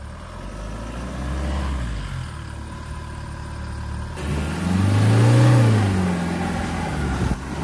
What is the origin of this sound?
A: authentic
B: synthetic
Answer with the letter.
A